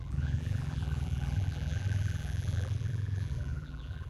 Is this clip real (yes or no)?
no